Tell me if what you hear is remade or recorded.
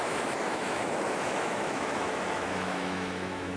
remade